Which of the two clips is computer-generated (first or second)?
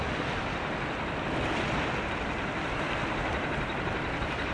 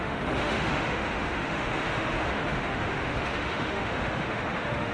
second